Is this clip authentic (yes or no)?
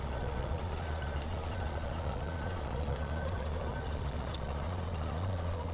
no